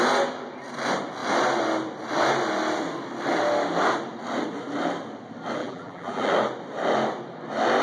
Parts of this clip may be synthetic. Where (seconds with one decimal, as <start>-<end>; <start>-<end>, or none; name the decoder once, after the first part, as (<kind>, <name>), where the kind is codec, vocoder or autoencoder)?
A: 5.6-6.3 (vocoder, BigVGAN v2)